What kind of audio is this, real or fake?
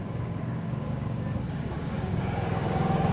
fake